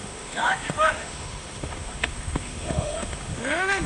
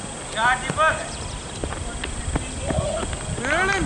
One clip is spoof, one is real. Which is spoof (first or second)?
first